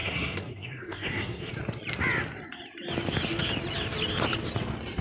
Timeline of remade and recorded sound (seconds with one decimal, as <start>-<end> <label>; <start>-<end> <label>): 0.0-1.5 remade; 1.5-5.0 recorded